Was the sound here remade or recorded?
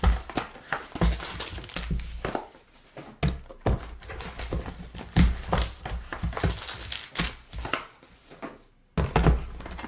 recorded